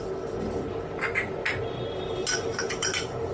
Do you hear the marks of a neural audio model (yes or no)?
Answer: no